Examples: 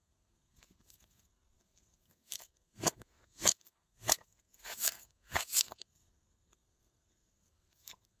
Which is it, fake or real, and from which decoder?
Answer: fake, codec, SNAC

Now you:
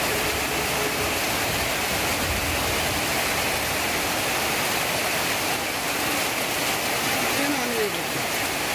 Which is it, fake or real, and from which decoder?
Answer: real